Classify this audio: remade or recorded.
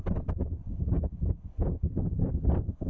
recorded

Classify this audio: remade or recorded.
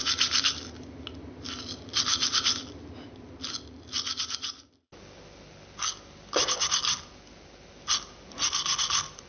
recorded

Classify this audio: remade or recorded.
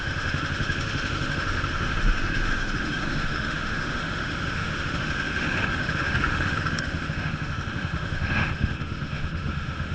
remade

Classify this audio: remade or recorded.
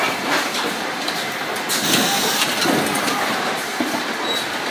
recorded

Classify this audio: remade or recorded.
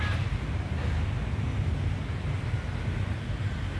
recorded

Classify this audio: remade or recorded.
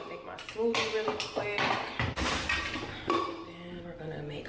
recorded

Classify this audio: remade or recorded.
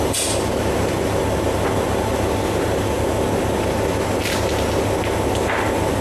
recorded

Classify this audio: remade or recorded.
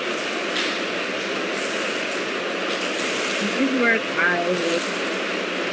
recorded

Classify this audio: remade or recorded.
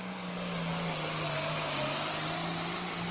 recorded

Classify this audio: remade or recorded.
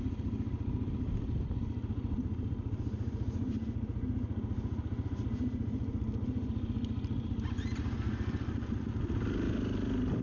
recorded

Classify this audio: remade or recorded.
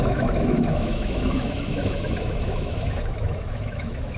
remade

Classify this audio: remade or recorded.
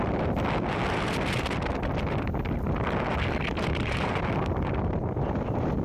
recorded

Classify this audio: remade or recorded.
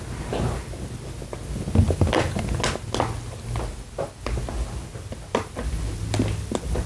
recorded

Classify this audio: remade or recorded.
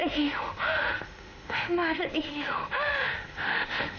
remade